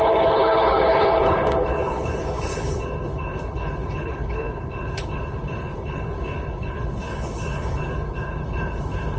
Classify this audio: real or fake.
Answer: fake